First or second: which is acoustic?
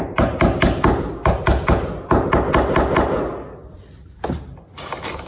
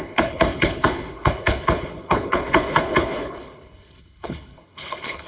first